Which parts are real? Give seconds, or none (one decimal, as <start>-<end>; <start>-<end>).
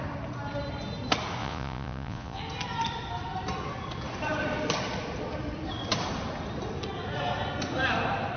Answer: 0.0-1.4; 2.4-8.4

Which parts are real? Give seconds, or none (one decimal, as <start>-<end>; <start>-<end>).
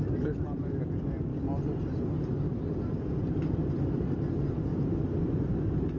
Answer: 0.0-6.0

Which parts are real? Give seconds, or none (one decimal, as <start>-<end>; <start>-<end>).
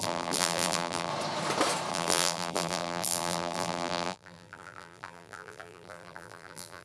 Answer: 1.1-1.9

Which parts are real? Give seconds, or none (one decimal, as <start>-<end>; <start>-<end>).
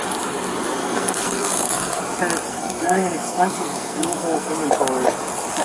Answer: 0.0-0.8; 2.0-2.5; 4.5-5.6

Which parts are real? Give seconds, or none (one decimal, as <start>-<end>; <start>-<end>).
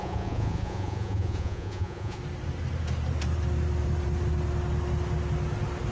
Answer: 2.2-5.9